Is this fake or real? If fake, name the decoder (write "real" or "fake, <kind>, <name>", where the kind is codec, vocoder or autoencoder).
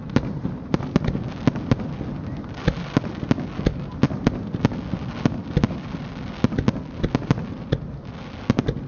real